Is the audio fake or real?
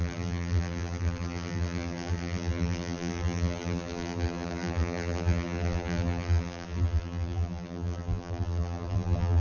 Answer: fake